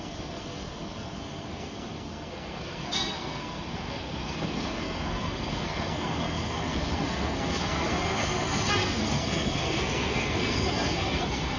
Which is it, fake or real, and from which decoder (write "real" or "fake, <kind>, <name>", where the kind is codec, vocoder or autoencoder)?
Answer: fake, codec, SNAC